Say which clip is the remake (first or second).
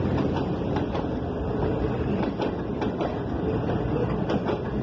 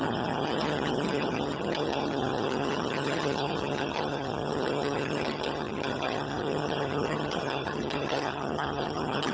second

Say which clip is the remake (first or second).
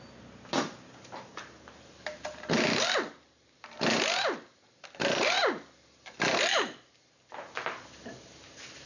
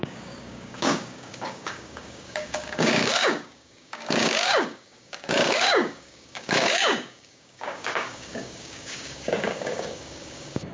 second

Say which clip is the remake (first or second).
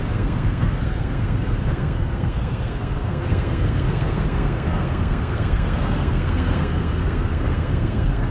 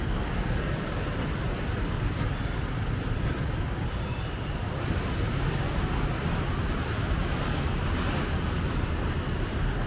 first